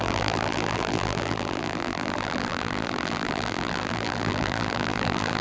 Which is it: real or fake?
fake